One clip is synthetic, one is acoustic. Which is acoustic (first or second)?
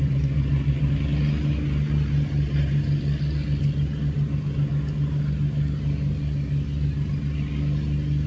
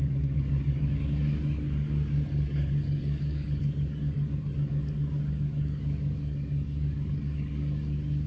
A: first